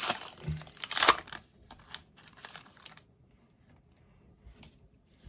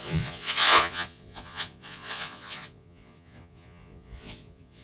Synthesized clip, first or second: second